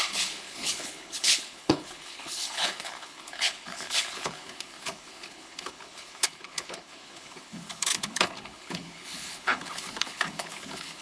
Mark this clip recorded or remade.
remade